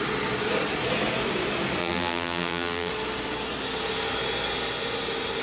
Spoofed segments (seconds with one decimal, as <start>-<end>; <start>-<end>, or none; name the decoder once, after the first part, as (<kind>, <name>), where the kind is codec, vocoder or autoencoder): 1.8-2.9 (vocoder, BigVGAN v2)